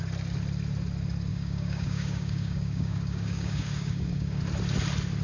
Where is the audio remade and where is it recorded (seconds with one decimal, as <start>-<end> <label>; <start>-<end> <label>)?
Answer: 0.0-1.3 recorded; 1.3-4.4 remade; 4.4-5.2 recorded